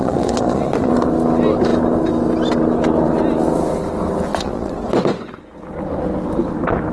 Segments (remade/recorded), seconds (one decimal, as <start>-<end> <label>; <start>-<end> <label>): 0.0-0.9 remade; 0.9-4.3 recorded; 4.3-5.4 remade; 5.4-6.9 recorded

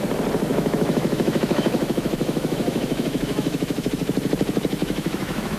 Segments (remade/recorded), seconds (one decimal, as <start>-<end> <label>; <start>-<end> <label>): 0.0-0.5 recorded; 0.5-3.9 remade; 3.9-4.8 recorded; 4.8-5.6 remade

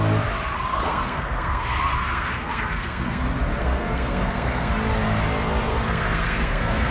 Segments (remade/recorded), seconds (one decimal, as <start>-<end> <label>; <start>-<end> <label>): 0.0-0.7 recorded; 0.7-3.2 remade; 3.2-3.6 recorded; 3.6-4.7 remade; 4.7-5.7 recorded; 5.7-6.9 remade

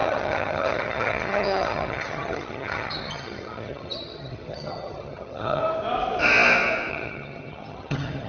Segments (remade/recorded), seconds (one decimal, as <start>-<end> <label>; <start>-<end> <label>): 0.0-5.6 remade; 5.6-6.9 recorded; 6.9-8.3 remade

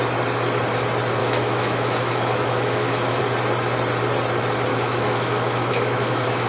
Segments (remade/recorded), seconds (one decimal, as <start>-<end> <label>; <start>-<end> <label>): 0.0-1.2 recorded; 1.2-3.2 remade; 3.2-4.7 recorded; 4.7-6.5 remade